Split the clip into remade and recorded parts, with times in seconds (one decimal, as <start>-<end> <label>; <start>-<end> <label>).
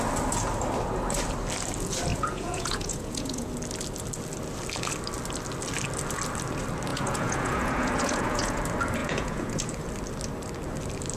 0.0-2.1 recorded; 2.1-3.5 remade; 3.5-6.9 recorded; 6.9-8.6 remade; 8.6-9.0 recorded; 9.0-9.7 remade; 9.7-11.2 recorded